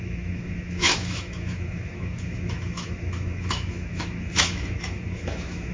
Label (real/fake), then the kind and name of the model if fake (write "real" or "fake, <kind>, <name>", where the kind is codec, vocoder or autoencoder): fake, autoencoder, DAC-VAE